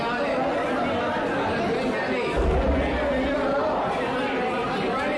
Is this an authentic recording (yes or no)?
yes